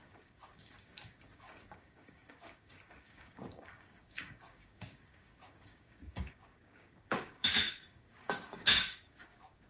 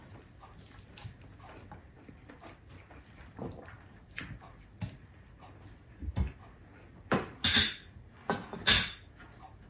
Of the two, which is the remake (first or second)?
first